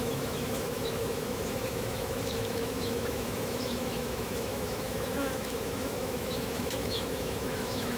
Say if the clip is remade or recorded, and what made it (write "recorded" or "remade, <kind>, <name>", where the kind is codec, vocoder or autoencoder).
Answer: remade, autoencoder, DAC-VAE